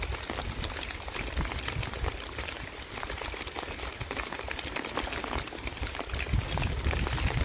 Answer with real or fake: real